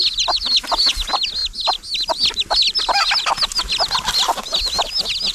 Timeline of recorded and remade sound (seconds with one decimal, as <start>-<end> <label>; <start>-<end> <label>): 0.0-5.3 recorded